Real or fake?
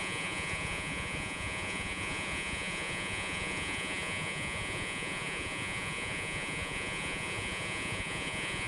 fake